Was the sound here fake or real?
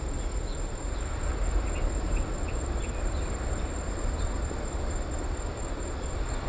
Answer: real